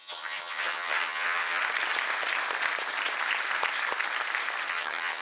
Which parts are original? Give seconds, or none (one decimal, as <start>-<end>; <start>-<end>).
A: 1.6-4.7

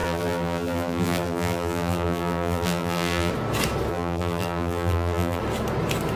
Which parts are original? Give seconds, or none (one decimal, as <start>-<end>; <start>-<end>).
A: 3.3-3.9; 5.4-6.2

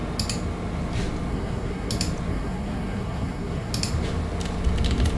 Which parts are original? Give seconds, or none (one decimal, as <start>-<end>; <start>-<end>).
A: 0.0-1.3; 1.9-2.3; 3.7-5.2

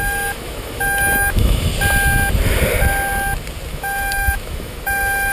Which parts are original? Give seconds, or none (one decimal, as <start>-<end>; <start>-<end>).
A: 1.7-3.7